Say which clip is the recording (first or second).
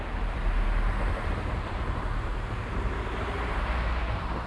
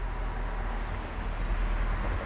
second